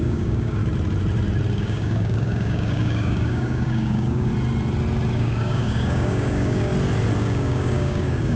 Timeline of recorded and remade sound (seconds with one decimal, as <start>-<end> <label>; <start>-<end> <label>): 0.0-0.6 remade; 0.6-1.5 recorded; 1.5-4.3 remade; 4.3-5.1 recorded; 5.1-6.7 remade; 6.7-7.2 recorded; 7.2-8.4 remade